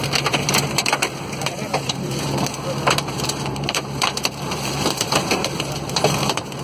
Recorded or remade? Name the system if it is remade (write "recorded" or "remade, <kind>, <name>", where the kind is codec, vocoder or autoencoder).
remade, vocoder, BigVGAN v2